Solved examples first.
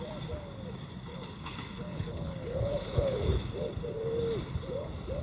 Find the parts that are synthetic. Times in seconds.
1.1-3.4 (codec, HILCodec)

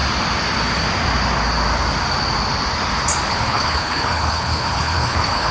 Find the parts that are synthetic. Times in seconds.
3.3-5.5 (codec, HILCodec)

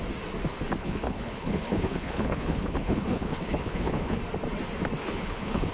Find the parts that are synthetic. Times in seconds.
0.8-4.2 (codec, HILCodec); 5.0-5.7

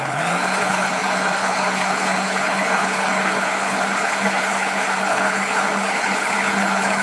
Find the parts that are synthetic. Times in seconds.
0.0-7.0 (codec, HILCodec)